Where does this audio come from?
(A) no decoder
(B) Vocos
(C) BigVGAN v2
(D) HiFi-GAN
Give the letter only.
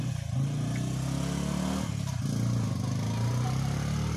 A